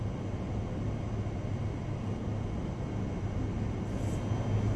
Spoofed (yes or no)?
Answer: no